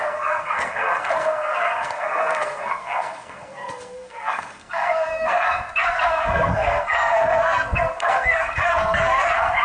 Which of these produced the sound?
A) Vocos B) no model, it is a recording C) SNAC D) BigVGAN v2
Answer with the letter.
C